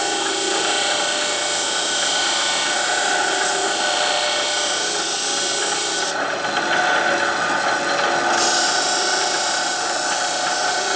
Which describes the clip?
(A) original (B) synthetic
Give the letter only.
A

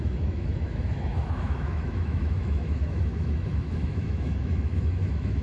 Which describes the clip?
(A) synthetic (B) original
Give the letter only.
A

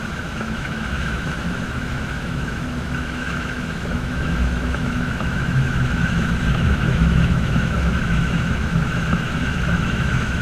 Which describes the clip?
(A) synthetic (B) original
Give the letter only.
A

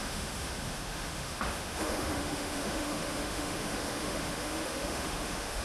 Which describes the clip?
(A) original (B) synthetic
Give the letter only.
B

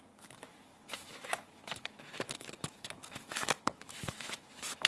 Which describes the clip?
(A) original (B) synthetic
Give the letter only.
B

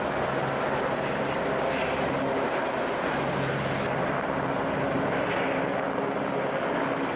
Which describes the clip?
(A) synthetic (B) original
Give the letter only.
B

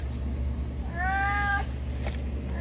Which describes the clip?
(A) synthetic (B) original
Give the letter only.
B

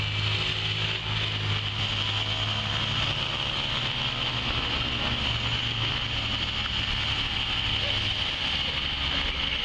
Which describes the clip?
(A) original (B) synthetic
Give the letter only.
A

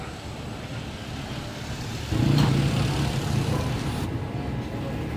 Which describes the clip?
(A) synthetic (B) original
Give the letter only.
B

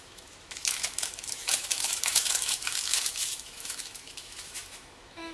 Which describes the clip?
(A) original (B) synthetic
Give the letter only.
B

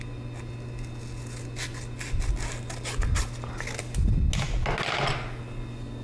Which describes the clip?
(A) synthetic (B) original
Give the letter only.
B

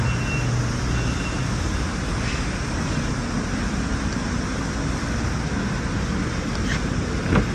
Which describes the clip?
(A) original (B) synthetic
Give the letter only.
A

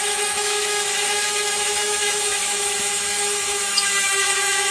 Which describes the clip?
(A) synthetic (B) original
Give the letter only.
A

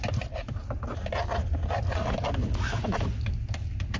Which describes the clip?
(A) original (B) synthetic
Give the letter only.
A